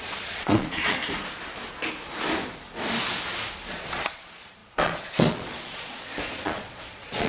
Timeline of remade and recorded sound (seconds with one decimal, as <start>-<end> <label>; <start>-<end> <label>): 0.0-1.0 remade; 1.0-3.7 recorded; 3.7-7.3 remade